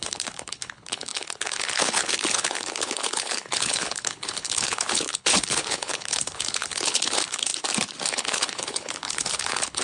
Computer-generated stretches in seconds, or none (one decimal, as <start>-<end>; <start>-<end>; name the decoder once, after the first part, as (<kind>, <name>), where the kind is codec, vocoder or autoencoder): 0.0-7.5 (codec, HILCodec); 8.1-9.8